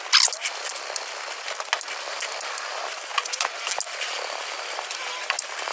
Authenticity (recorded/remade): recorded